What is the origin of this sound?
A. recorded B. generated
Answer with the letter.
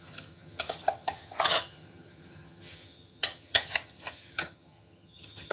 B